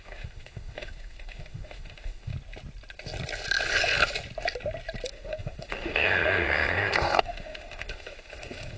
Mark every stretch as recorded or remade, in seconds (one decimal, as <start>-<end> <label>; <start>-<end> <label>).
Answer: 0.0-2.3 remade; 2.3-5.1 recorded; 5.1-8.8 remade